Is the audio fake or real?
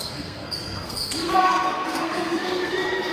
fake